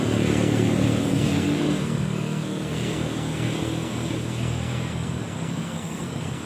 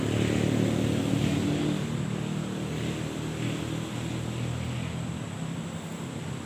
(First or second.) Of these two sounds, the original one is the second